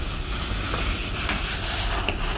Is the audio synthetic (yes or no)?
no